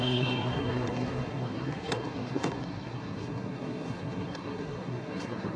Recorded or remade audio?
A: remade